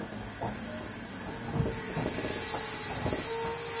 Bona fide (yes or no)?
yes